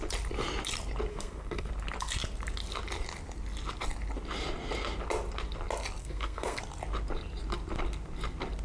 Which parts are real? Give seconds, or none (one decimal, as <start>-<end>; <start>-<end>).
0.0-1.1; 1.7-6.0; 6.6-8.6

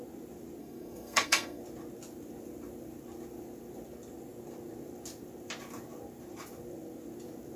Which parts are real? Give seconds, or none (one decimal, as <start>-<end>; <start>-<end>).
0.0-0.6; 1.6-7.6

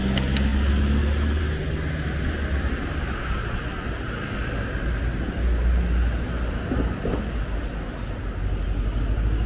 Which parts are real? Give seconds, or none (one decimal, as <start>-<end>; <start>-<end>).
0.0-9.5

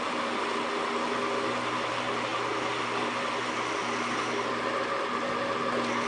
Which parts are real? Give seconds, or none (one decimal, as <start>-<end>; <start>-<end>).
0.0-6.1